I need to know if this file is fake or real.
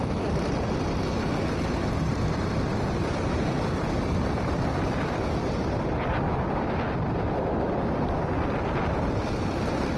real